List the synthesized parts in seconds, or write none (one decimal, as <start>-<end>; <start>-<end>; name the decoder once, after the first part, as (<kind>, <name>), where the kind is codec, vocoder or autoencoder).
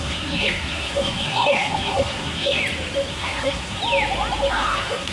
0.0-2.6 (codec, SNAC); 3.1-3.8; 4.5-5.1